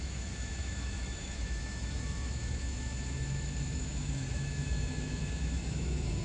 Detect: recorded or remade remade